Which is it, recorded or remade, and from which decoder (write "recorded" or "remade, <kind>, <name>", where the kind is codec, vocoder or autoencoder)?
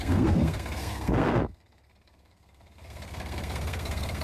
remade, codec, SNAC